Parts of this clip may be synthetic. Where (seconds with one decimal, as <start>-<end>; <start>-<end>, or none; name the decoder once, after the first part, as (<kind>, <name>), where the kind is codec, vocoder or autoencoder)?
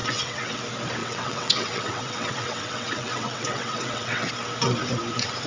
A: 0.0-0.6 (vocoder, WaveNeXt); 1.0-4.3